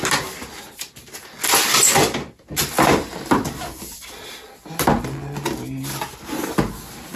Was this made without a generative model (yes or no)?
yes